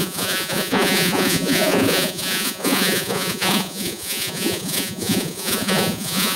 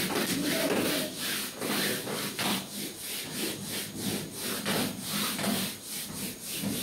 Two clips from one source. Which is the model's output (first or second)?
first